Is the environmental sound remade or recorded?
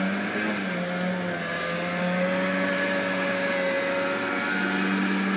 recorded